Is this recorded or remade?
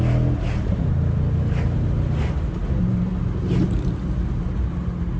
recorded